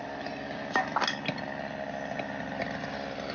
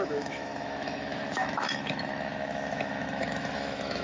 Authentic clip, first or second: first